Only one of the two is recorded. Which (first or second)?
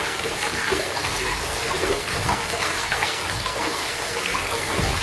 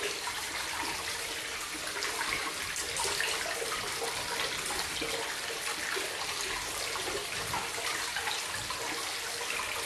second